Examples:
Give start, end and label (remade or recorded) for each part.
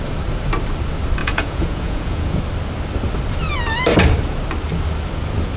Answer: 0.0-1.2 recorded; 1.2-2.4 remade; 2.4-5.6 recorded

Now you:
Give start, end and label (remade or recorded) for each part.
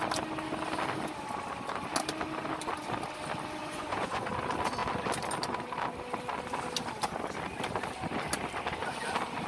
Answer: 0.0-3.6 recorded; 3.6-4.3 remade; 4.3-9.5 recorded